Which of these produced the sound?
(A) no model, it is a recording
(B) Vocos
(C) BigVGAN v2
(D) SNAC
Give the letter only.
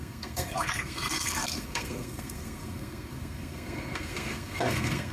D